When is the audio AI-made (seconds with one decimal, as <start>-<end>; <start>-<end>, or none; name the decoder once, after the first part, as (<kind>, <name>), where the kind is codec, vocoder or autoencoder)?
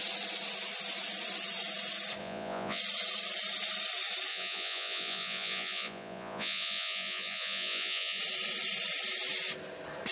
2.2-2.8 (vocoder, Vocos); 4.3-8.2